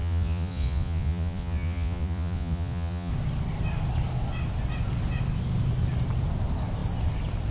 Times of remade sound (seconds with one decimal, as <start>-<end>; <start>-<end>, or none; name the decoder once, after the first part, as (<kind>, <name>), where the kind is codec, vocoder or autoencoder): 0.0-3.1 (vocoder, Vocos)